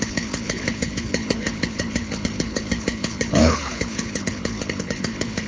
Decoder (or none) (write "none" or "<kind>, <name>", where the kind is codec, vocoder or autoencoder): codec, HILCodec